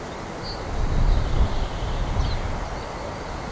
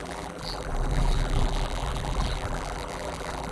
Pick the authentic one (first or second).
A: first